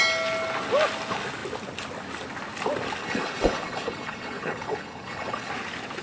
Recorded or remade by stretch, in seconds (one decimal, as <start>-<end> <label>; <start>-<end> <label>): 0.0-3.0 recorded; 3.0-5.5 remade; 5.5-6.0 recorded